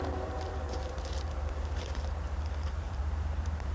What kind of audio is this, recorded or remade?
remade